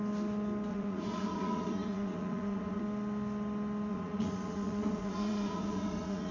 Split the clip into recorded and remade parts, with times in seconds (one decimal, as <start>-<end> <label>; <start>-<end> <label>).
0.0-0.7 recorded; 0.7-2.8 remade; 2.8-3.9 recorded; 3.9-6.3 remade